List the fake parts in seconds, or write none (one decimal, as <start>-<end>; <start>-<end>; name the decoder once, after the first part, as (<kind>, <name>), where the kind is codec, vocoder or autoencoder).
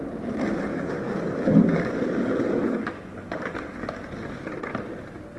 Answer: 0.7-3.9 (codec, DAC)